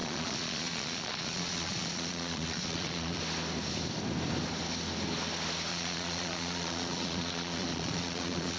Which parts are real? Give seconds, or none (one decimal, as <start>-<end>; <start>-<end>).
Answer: 3.2-5.7